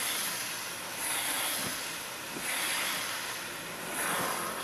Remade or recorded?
recorded